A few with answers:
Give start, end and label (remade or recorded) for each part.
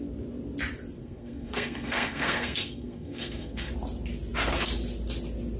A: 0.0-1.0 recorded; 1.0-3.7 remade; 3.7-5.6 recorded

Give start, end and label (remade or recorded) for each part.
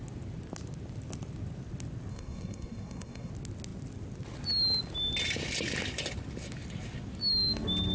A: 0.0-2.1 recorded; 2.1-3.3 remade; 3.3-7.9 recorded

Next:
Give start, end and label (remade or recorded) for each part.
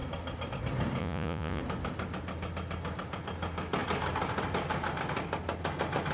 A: 0.0-1.0 recorded; 1.0-1.6 remade; 1.6-6.1 recorded